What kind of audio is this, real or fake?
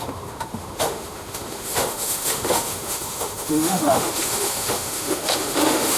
fake